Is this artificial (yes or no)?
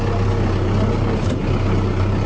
no